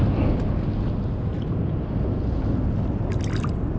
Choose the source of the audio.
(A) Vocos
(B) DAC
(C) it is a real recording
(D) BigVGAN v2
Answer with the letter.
C